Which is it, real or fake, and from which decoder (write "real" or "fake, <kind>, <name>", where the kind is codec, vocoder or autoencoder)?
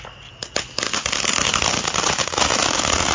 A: real